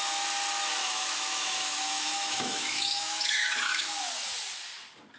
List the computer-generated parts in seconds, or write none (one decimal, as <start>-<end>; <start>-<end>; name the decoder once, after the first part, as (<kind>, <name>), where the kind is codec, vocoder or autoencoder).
0.8-3.9 (autoencoder, DAC-VAE)